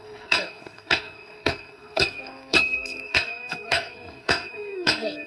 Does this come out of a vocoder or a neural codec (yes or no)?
yes